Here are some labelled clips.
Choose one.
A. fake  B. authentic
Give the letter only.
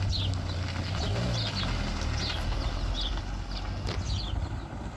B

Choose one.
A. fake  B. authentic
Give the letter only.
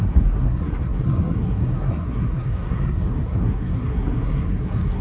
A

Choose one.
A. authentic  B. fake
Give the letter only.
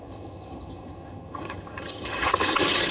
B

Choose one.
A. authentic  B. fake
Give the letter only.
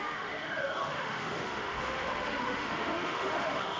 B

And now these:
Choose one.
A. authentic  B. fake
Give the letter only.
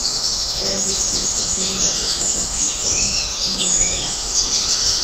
B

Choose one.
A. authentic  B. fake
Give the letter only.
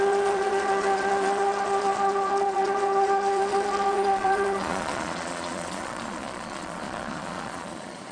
B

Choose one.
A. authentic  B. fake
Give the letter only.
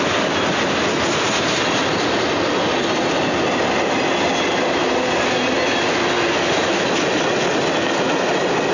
A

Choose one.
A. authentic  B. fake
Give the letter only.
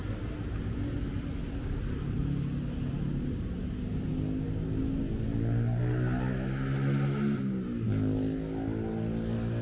A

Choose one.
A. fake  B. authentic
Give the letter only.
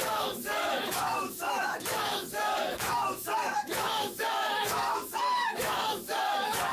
A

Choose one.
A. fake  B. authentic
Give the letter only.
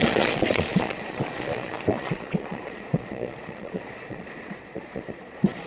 A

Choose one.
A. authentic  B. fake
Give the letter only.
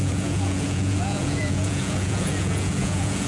B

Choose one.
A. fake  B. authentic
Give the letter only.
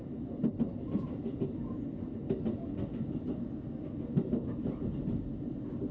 B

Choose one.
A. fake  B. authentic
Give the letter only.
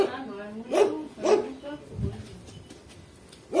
B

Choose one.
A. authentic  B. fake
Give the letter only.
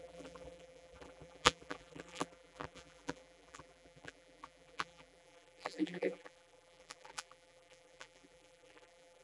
B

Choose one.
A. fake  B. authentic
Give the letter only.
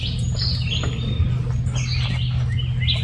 B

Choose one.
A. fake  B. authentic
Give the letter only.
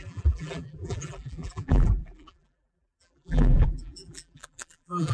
A